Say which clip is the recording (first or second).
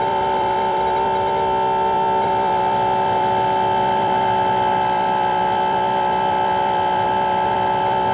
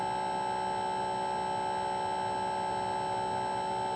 second